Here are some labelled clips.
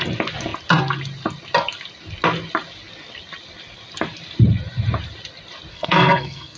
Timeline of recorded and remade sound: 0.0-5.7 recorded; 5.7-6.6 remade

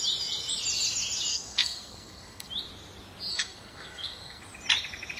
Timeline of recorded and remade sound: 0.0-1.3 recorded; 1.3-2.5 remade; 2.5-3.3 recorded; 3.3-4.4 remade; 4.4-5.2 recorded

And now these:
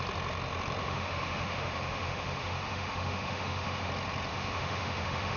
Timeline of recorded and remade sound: 0.0-0.8 recorded; 0.8-3.9 remade; 3.9-4.3 recorded; 4.3-5.4 remade

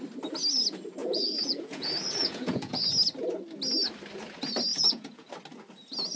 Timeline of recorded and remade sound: 0.0-1.0 recorded; 1.0-2.9 remade; 2.9-4.7 recorded; 4.7-5.3 remade; 5.3-6.2 recorded